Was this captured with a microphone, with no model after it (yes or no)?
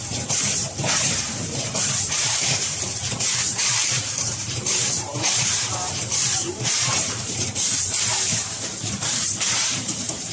no